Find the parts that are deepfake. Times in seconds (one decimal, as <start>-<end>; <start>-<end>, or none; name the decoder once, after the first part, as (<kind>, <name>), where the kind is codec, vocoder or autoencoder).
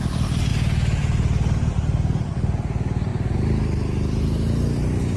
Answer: none